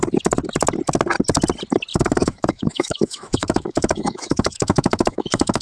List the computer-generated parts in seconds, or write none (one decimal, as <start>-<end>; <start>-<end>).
1.9-5.6